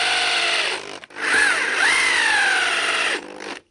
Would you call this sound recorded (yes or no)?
yes